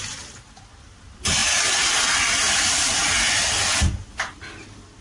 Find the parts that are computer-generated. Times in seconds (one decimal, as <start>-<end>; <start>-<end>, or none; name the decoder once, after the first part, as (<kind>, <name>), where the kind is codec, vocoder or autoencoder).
1.4-2.1 (vocoder, BigVGAN v2)